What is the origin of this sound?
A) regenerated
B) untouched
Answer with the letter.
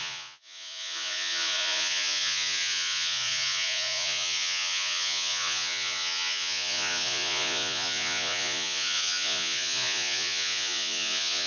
A